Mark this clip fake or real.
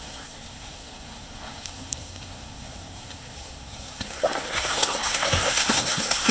fake